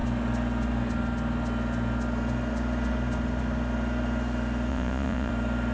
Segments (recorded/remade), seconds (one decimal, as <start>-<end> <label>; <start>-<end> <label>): 0.0-4.7 recorded; 4.7-5.3 remade; 5.3-5.7 recorded